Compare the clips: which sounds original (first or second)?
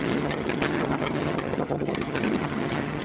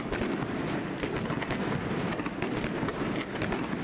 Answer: second